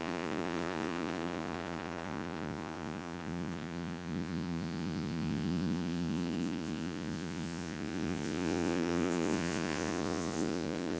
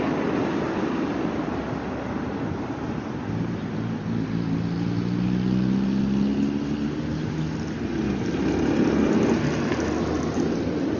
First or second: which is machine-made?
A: first